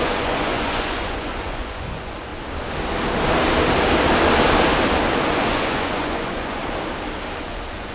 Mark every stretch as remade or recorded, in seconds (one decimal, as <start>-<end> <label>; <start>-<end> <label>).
0.0-2.3 remade; 2.3-5.3 recorded; 5.3-6.6 remade; 6.6-7.4 recorded; 7.4-7.9 remade